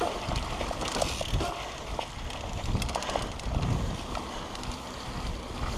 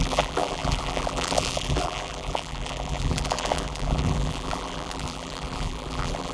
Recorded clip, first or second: first